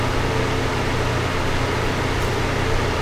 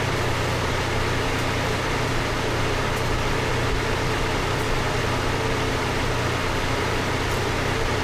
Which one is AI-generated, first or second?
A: second